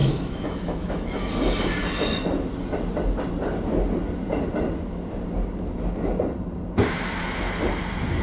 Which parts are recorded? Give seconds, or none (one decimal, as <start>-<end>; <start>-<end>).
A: 1.3-8.2